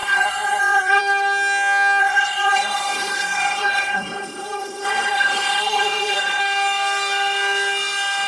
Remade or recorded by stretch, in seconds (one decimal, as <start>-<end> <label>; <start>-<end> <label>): 0.0-1.0 remade; 1.0-2.0 recorded; 2.0-6.4 remade; 6.4-8.3 recorded

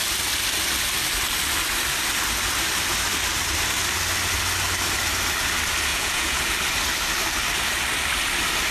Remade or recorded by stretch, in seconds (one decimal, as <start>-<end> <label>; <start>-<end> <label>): 0.0-5.9 recorded; 5.9-6.5 remade; 6.5-8.7 recorded

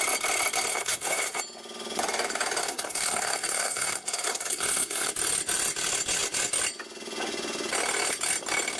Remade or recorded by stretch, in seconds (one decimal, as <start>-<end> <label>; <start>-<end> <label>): 0.0-0.7 recorded; 0.7-1.4 remade; 1.4-2.6 recorded; 2.6-5.1 remade; 5.1-8.8 recorded

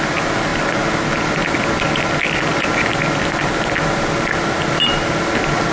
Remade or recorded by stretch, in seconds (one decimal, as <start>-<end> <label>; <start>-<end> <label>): 0.0-5.7 recorded

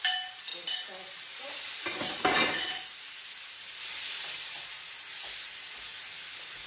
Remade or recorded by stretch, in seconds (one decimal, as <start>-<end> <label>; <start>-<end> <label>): 0.0-6.7 recorded

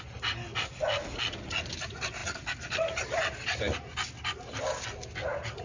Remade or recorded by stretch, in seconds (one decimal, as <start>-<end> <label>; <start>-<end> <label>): 0.0-5.6 recorded